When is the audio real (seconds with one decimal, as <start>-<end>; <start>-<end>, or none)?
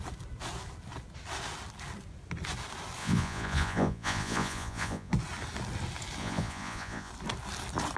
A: 0.0-3.0; 5.1-6.2; 7.1-8.0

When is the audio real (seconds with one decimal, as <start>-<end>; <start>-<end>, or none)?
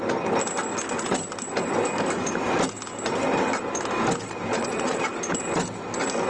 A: 0.0-4.5; 5.1-6.3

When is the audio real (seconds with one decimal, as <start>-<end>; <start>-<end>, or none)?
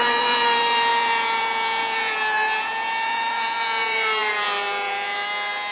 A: none